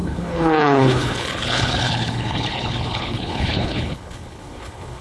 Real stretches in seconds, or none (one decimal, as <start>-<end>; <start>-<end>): none